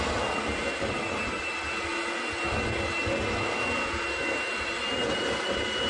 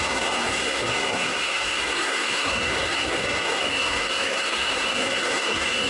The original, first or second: first